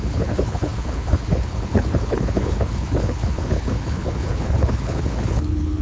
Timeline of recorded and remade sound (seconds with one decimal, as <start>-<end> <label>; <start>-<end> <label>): 0.0-5.8 remade